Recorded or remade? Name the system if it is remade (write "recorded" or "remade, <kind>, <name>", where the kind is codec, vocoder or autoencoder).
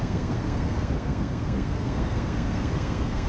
remade, codec, SNAC